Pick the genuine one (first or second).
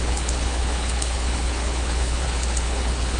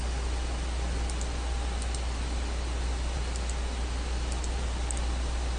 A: second